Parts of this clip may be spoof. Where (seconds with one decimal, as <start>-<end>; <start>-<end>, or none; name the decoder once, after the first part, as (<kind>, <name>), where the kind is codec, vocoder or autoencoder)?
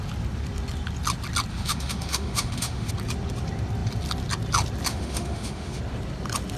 1.5-2.9 (autoencoder, DAC-VAE); 4.9-5.8